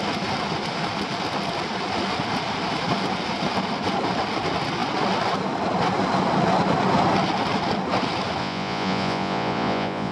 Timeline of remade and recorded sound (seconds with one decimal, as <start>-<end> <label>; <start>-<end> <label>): 0.0-8.4 recorded; 8.4-10.1 remade